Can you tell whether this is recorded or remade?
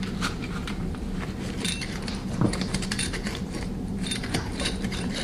remade